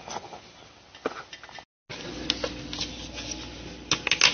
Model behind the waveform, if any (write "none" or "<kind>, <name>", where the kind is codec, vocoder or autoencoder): none